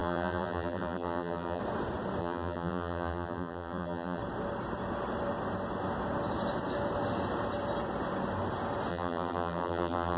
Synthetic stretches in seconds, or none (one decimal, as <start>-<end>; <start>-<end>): 0.0-1.6; 2.2-4.2; 8.9-10.2